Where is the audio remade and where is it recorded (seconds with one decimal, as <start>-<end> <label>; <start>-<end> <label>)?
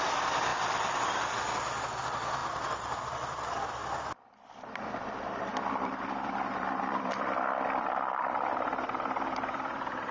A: 0.0-3.8 remade; 3.8-5.4 recorded; 5.4-10.1 remade